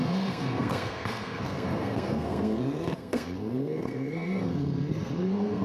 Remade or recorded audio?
remade